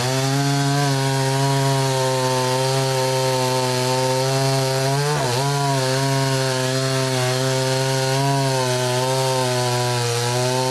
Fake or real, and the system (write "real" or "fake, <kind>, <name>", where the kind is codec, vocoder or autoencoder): real